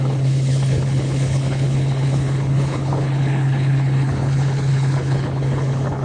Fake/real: fake